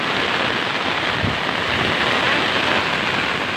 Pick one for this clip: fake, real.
real